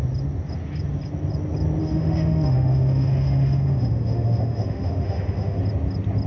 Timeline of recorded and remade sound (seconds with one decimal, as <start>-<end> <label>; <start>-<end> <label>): 0.0-1.8 recorded; 1.8-5.6 remade; 5.6-6.3 recorded